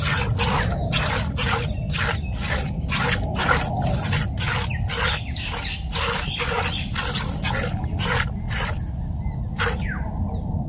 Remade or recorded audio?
recorded